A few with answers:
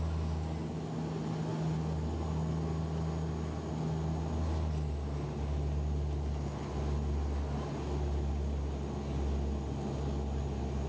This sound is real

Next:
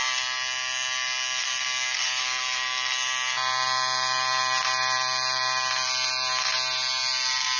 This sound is real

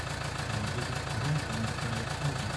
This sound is real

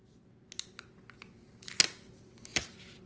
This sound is real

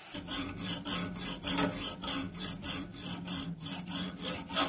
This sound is real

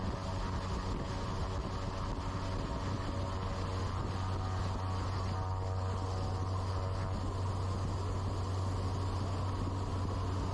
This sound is real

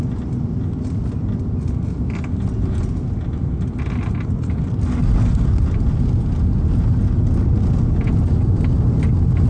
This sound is real